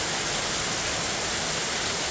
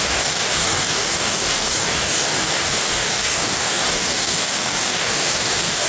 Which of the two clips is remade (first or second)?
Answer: second